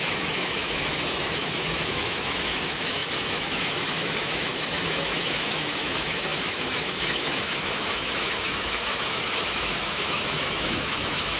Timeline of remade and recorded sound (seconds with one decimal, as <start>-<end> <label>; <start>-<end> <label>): 0.0-11.4 remade